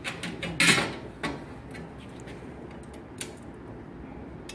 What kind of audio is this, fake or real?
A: real